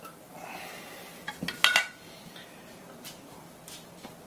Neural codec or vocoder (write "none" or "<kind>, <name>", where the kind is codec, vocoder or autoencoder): none